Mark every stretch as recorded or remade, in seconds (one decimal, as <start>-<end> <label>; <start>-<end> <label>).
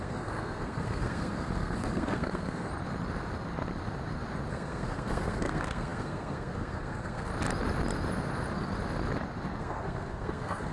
0.0-2.7 remade; 2.7-4.5 recorded; 4.5-7.3 remade; 7.3-9.6 recorded; 9.6-10.7 remade